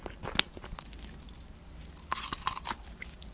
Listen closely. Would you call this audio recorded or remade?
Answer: recorded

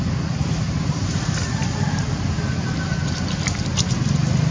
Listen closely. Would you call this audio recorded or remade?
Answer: recorded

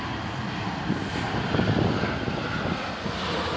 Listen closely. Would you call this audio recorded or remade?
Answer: recorded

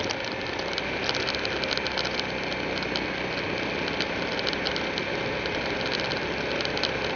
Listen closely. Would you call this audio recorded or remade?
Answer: recorded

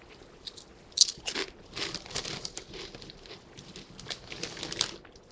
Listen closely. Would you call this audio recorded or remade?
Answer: recorded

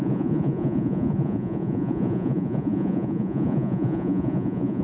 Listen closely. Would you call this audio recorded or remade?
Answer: remade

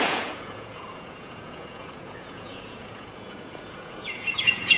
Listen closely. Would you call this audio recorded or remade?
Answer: remade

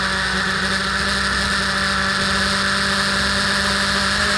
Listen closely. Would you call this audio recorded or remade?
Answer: recorded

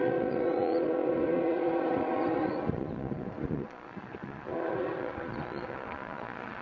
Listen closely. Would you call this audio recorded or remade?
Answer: remade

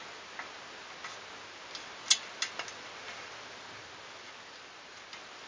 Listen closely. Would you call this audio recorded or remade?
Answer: recorded